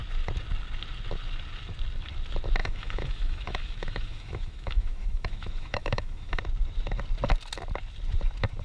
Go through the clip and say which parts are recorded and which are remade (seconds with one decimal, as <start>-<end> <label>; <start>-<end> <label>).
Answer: 0.0-2.6 recorded; 2.6-6.4 remade; 6.4-8.6 recorded